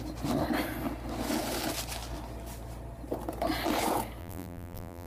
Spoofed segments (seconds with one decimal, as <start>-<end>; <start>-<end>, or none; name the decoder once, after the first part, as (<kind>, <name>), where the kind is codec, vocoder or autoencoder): 4.2-5.1 (vocoder, BigVGAN v2)